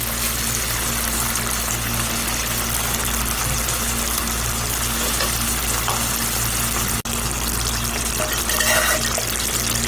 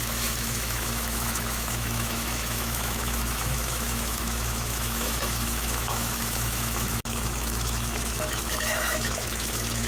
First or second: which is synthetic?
second